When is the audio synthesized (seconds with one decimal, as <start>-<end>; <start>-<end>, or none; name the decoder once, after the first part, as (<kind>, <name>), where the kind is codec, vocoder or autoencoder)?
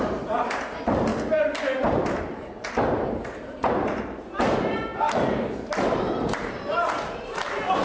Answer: 0.0-1.1 (vocoder, BigVGAN v2); 1.8-7.8